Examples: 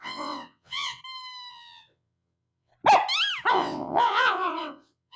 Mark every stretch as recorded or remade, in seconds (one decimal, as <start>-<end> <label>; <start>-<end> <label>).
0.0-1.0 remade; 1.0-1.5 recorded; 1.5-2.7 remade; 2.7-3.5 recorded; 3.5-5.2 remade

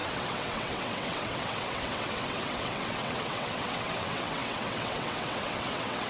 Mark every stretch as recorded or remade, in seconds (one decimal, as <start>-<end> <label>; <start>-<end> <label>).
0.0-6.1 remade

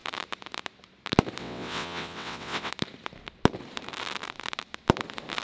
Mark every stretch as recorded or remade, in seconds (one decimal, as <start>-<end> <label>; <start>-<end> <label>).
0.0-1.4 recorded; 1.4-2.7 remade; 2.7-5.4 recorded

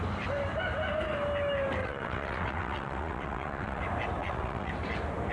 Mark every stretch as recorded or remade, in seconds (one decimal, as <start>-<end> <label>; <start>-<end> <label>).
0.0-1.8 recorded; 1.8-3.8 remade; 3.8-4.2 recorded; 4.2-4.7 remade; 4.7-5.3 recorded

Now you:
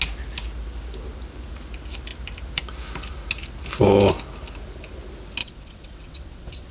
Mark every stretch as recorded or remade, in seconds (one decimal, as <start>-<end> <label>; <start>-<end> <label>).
0.0-5.4 recorded; 5.4-6.7 remade

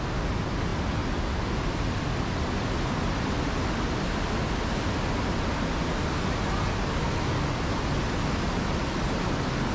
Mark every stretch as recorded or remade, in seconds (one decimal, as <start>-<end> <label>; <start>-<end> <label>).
0.0-9.7 recorded

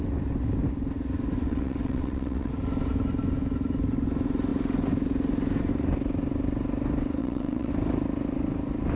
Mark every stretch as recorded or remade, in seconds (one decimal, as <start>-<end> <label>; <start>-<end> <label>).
0.0-1.5 recorded; 1.5-2.5 remade; 2.5-7.2 recorded; 7.2-7.7 remade; 7.7-9.0 recorded

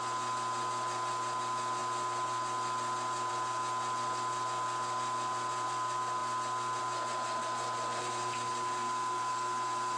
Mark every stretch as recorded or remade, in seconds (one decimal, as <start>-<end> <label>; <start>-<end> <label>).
0.0-10.0 recorded